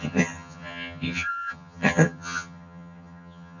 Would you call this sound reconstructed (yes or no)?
yes